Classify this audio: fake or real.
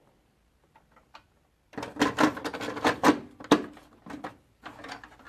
real